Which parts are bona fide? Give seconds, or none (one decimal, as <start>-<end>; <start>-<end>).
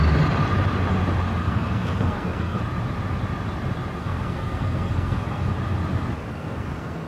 0.0-1.4; 2.6-4.0; 5.5-6.3